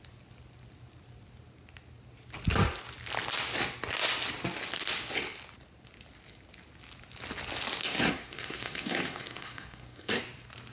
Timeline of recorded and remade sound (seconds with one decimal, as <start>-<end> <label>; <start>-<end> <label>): 0.0-7.8 recorded; 7.8-10.2 remade; 10.2-10.7 recorded